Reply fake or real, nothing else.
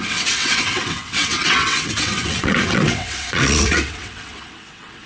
fake